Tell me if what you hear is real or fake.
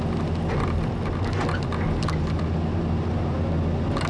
real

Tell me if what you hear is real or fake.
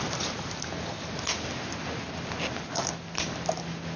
real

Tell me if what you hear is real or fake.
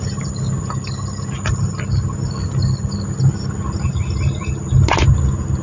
real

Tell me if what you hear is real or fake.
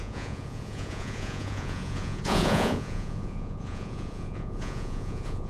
fake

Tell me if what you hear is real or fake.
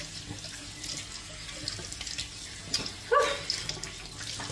real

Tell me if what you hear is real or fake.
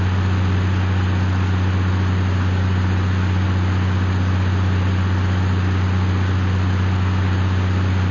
real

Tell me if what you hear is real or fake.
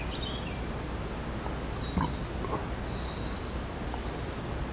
real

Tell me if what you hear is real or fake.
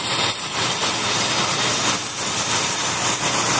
real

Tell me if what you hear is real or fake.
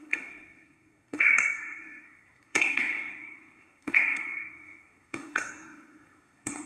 fake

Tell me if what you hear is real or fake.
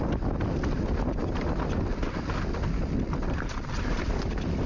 real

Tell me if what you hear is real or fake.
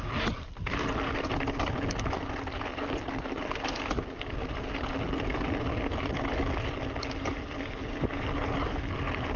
real